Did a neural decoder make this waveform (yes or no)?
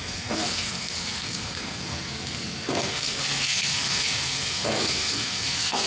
yes